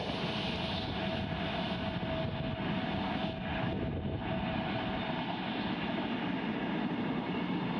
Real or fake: real